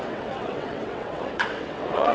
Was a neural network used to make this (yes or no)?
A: yes